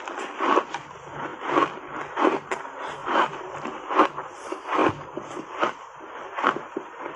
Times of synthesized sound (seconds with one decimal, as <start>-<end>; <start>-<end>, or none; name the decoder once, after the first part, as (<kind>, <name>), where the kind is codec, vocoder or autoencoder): 3.0-3.9 (vocoder, BigVGAN v2)